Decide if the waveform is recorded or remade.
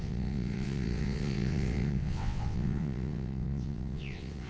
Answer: remade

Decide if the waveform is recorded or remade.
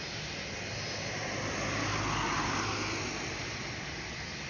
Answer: recorded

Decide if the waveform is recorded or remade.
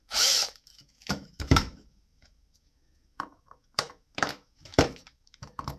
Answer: remade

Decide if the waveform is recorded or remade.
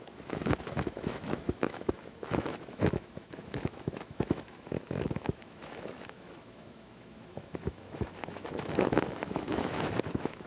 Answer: remade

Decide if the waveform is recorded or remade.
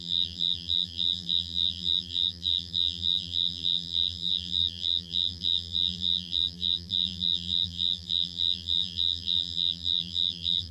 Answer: remade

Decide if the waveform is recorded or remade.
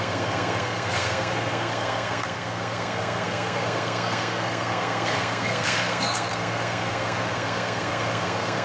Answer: remade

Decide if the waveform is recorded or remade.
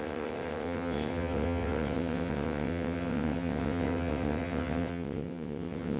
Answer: remade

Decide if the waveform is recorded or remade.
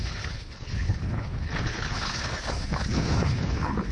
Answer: remade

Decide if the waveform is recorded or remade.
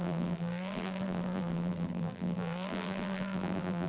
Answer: remade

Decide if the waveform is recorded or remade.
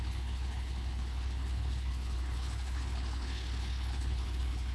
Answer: remade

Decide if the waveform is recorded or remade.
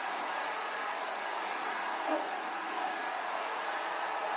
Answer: remade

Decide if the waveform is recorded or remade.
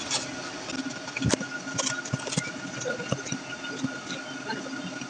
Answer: recorded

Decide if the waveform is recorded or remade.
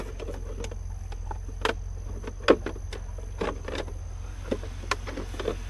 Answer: recorded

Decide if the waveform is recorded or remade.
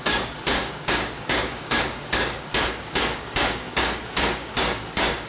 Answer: remade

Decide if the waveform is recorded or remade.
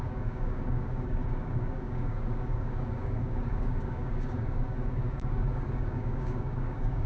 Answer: remade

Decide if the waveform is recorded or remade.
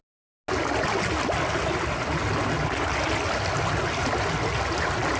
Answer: recorded